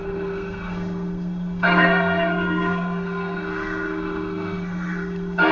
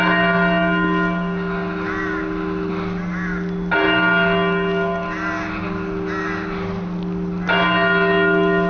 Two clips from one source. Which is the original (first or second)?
second